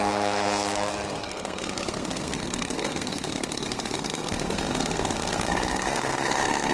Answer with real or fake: fake